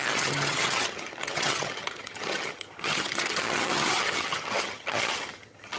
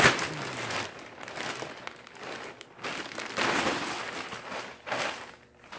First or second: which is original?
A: second